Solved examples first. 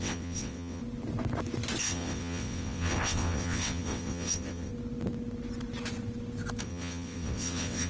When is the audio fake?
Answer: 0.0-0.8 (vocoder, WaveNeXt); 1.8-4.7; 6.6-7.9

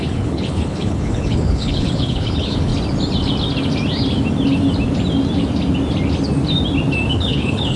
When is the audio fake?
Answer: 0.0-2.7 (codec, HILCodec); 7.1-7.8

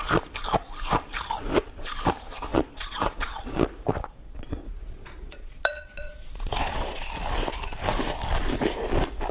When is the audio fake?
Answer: 2.5-7.1 (vocoder, Vocos)

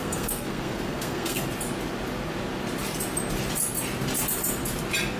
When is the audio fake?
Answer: 0.0-1.4 (codec, SNAC)

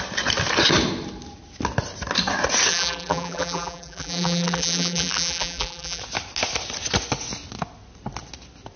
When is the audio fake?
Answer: 2.7-6.0 (vocoder, BigVGAN v2)

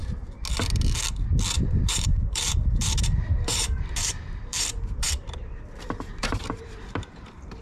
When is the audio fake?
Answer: 1.6-7.6 (vocoder, BigVGAN v2)